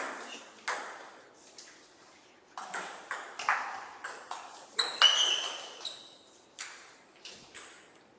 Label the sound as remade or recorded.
recorded